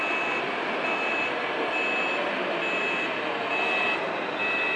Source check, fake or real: real